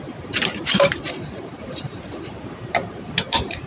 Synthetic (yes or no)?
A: yes